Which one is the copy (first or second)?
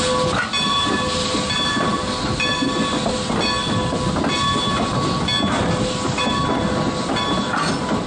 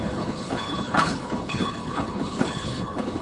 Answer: second